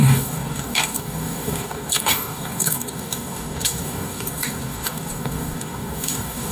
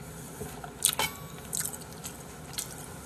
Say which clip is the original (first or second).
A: second